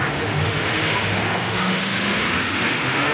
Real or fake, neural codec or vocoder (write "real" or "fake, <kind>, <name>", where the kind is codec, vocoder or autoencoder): fake, autoencoder, DAC-VAE